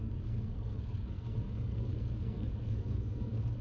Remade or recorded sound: remade